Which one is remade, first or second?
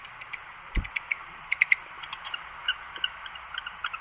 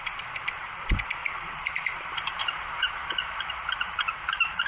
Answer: second